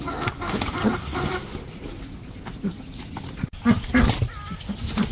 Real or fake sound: fake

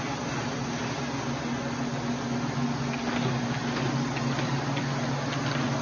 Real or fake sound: real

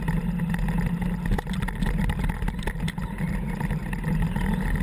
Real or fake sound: real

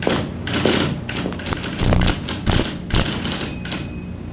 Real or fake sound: real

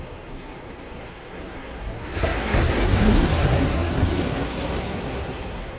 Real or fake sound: fake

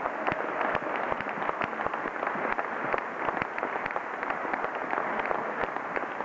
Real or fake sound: real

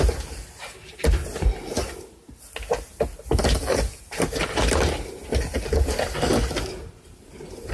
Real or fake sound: real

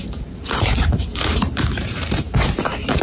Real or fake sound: fake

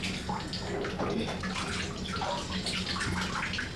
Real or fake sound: real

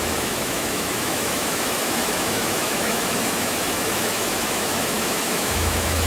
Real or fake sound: fake